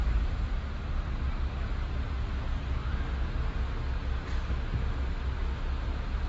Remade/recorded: recorded